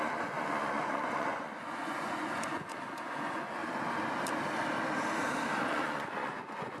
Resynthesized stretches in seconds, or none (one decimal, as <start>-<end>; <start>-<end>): 0.0-3.6; 5.6-6.8